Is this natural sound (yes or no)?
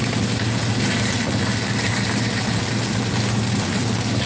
yes